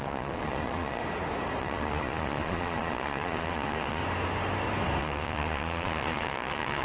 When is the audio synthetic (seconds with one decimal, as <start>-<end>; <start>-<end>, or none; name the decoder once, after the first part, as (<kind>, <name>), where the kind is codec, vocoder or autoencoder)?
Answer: 0.0-1.0 (vocoder, Vocos); 1.6-4.0; 5.0-6.8